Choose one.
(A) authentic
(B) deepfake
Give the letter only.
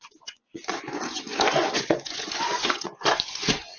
B